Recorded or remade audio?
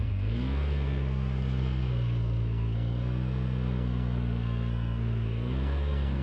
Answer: remade